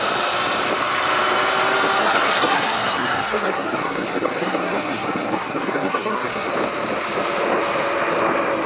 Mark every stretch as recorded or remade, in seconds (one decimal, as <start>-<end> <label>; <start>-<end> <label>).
0.0-2.0 recorded; 2.0-6.5 remade; 6.5-8.7 recorded